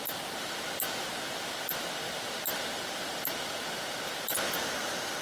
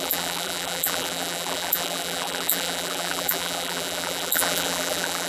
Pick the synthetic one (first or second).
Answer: second